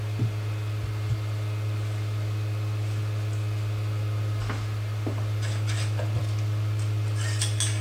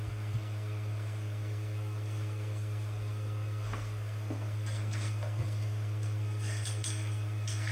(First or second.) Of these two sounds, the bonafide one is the first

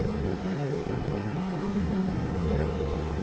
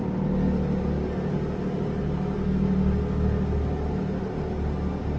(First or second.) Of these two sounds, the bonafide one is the second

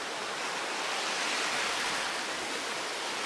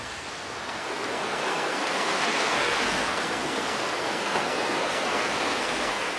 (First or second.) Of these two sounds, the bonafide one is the first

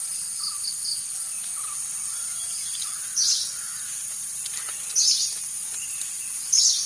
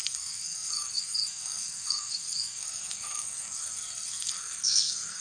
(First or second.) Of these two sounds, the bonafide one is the first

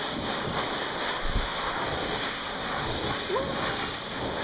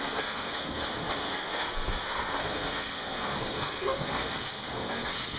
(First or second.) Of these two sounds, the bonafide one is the first